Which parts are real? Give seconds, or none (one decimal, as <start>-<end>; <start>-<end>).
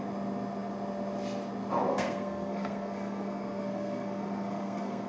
0.0-1.9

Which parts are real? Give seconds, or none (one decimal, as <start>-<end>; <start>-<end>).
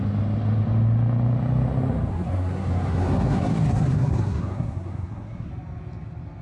0.0-2.1; 5.5-6.4